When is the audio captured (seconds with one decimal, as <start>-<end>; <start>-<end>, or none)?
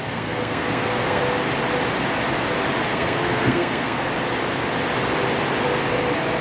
1.2-2.9; 4.0-6.4